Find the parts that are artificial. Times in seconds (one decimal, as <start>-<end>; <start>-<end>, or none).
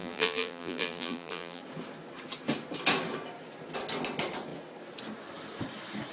0.0-1.6